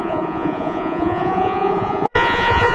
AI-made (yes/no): yes